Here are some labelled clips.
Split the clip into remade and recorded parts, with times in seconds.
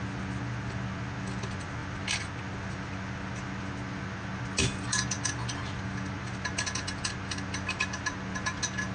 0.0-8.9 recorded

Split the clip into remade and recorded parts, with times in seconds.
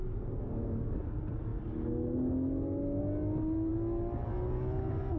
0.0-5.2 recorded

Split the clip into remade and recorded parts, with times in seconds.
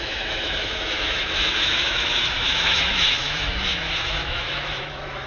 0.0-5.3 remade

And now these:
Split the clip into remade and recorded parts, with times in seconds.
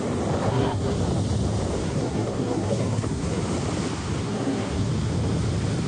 0.0-0.4 recorded; 0.4-1.0 remade; 1.0-1.8 recorded; 1.8-3.4 remade; 3.4-4.2 recorded; 4.2-4.9 remade; 4.9-5.9 recorded